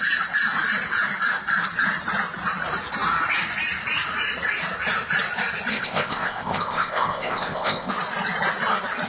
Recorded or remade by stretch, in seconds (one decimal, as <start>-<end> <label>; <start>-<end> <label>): 0.0-5.7 recorded; 5.7-7.9 remade; 7.9-9.1 recorded

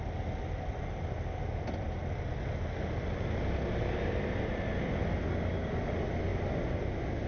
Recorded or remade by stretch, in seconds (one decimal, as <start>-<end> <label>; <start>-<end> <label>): 0.0-7.3 recorded

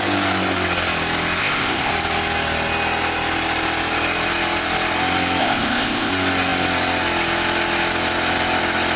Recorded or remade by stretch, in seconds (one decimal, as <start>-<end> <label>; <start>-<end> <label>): 0.0-1.4 recorded; 1.4-1.9 remade; 1.9-5.4 recorded; 5.4-6.1 remade; 6.1-9.0 recorded

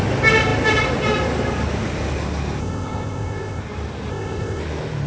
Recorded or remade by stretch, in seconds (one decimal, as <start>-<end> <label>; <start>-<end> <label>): 0.0-2.6 recorded; 2.6-3.6 remade; 3.6-4.1 recorded; 4.1-4.6 remade; 4.6-5.1 recorded

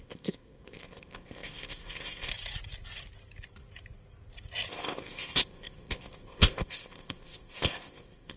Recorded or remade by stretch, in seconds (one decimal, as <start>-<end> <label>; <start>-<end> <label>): 0.0-2.3 remade; 2.3-4.7 recorded; 4.7-8.4 remade

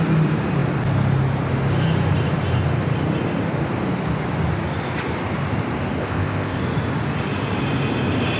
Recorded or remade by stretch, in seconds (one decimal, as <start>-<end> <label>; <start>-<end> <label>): 0.0-6.0 recorded; 6.0-6.6 remade; 6.6-8.4 recorded

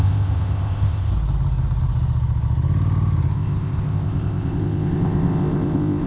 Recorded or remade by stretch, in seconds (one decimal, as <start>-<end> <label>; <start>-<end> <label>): 0.0-1.1 remade; 1.1-3.3 recorded; 3.3-6.1 remade

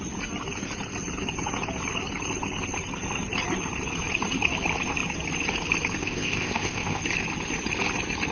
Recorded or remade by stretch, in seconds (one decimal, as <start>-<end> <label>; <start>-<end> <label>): 0.0-6.0 recorded; 6.0-7.0 remade; 7.0-8.3 recorded